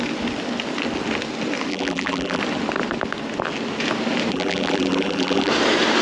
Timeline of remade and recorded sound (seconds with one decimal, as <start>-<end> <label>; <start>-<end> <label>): 0.0-1.7 recorded; 1.7-2.4 remade; 2.4-4.3 recorded; 4.3-5.5 remade; 5.5-6.0 recorded